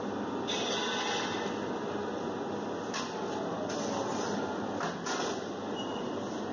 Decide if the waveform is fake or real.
real